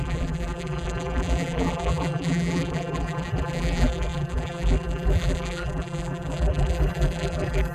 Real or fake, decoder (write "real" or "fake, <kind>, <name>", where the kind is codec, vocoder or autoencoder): fake, vocoder, BigVGAN v2